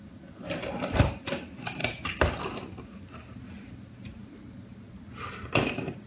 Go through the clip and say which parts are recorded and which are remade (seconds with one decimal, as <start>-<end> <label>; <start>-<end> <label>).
0.0-6.1 recorded